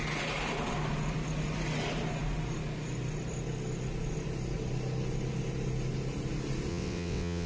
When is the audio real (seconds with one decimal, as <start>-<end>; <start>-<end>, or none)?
0.0-6.7